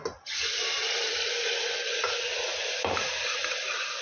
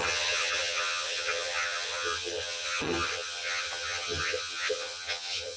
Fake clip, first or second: second